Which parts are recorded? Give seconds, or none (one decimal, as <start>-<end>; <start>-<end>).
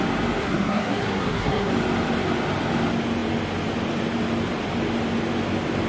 0.0-0.4; 1.7-5.9